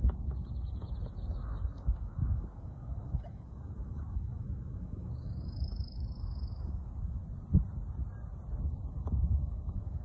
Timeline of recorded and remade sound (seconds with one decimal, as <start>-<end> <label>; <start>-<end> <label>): 0.0-7.2 remade; 7.2-8.7 recorded; 8.7-10.0 remade

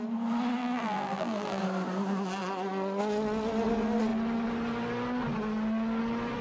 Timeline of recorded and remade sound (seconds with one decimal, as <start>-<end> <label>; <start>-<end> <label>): 0.0-0.6 recorded; 0.6-1.6 remade; 1.6-6.4 recorded

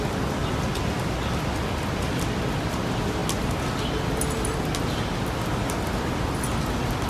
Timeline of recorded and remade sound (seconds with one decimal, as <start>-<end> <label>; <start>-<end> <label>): 0.0-7.1 recorded

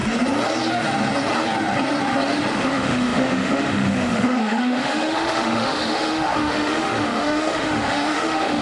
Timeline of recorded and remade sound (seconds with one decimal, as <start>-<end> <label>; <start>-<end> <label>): 0.0-2.5 recorded; 2.5-8.6 remade

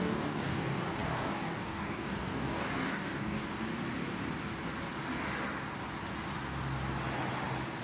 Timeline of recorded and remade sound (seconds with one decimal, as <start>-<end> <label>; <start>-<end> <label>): 0.0-3.4 remade; 3.4-7.8 recorded

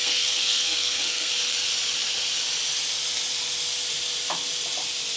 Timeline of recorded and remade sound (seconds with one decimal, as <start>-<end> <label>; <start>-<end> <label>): 0.0-1.3 remade; 1.3-5.2 recorded

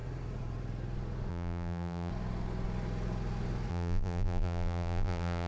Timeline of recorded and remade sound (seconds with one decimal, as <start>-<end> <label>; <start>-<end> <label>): 0.0-1.3 recorded; 1.3-2.1 remade; 2.1-3.7 recorded; 3.7-5.5 remade